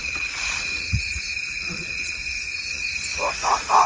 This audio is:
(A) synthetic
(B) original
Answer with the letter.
A